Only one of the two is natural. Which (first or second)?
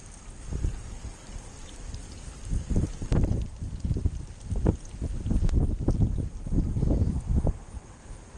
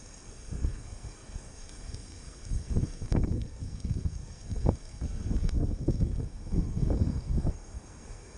first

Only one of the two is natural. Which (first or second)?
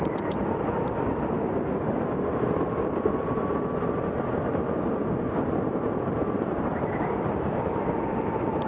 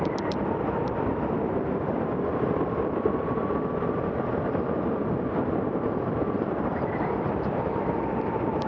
first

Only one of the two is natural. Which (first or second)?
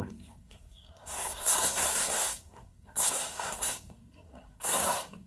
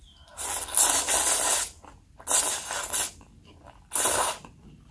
second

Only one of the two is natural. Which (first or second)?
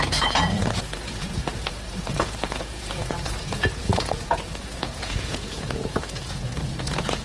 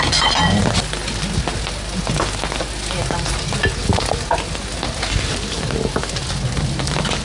second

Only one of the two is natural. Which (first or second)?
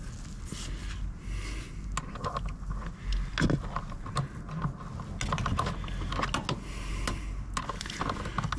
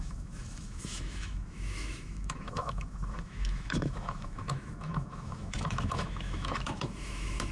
first